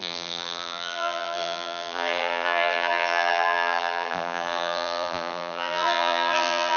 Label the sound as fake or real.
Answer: fake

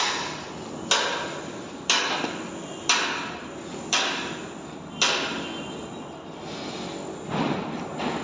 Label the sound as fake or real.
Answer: real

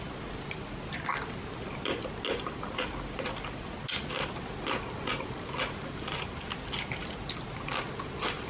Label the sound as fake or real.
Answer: real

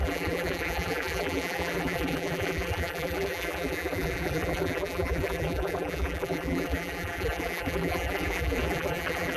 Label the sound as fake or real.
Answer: fake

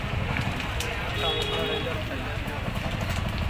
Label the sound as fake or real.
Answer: real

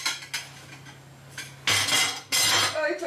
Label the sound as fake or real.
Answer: real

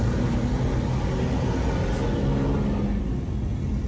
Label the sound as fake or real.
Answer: real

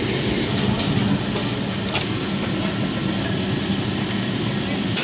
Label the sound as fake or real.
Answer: real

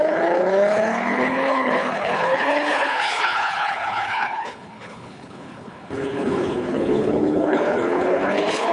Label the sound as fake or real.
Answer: fake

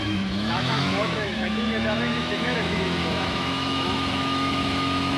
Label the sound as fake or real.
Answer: fake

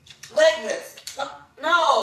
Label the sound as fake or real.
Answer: fake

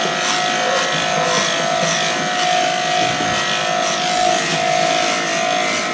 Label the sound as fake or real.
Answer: real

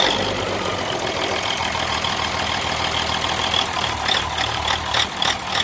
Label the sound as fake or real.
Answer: fake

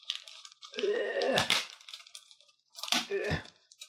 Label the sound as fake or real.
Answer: fake